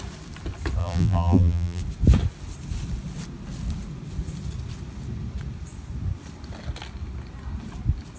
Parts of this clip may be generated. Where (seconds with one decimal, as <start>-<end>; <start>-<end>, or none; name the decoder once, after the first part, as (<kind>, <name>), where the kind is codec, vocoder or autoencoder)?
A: 0.8-1.8 (vocoder, BigVGAN v2)